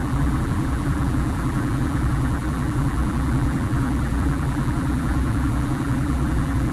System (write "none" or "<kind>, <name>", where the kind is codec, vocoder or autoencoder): vocoder, BigVGAN v2